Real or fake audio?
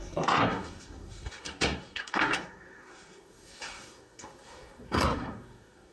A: fake